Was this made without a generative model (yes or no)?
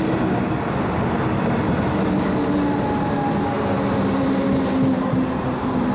yes